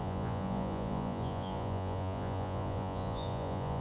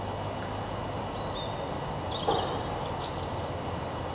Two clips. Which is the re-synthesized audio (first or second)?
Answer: first